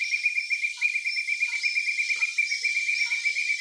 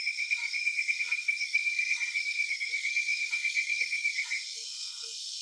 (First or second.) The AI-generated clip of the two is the second